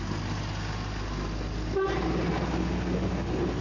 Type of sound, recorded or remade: recorded